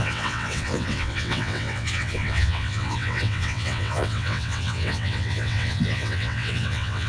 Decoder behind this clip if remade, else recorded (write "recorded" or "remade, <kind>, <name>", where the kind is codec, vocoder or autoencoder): remade, vocoder, WaveNeXt